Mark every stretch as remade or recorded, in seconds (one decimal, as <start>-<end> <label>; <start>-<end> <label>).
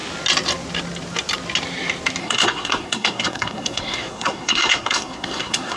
0.0-2.2 recorded; 2.2-5.8 remade